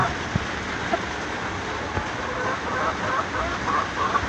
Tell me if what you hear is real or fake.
real